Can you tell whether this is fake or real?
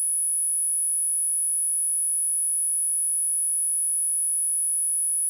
real